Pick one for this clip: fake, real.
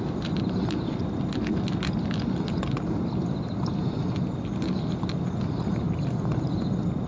real